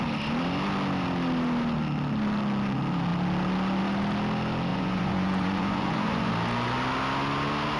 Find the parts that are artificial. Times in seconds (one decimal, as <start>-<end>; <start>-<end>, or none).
4.7-6.3